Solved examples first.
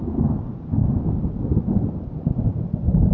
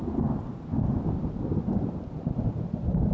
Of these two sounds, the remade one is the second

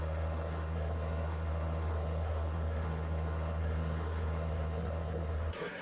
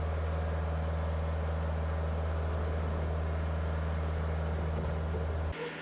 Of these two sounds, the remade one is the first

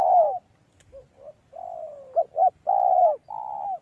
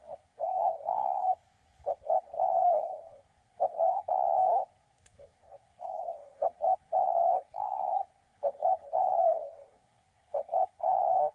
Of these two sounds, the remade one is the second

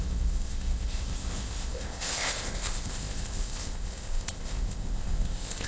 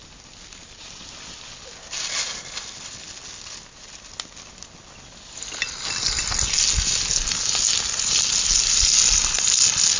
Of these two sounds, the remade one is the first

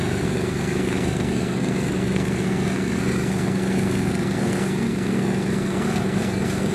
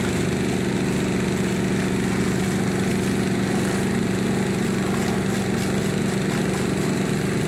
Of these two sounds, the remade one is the first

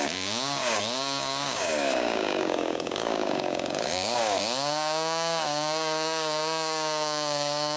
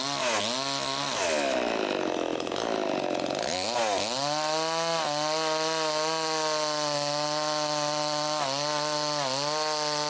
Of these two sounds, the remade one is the first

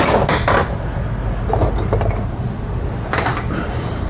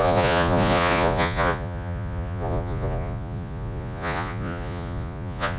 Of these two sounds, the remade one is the second